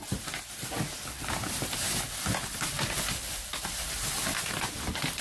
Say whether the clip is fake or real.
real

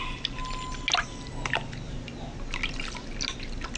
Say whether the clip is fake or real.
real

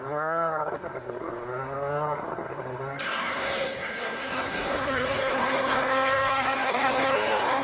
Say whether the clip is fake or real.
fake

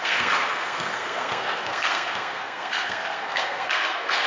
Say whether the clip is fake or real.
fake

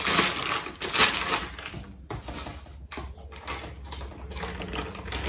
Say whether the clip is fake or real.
real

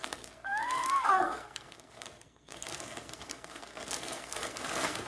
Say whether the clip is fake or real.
fake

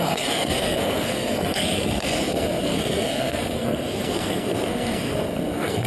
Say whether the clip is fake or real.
fake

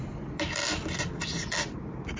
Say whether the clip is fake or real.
real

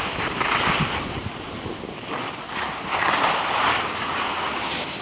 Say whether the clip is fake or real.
real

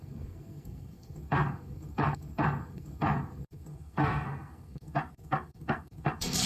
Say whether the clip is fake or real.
fake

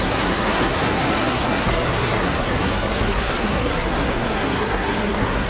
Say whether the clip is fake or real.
fake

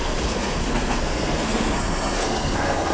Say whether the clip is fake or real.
fake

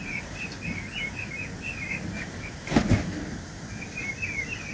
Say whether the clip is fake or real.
real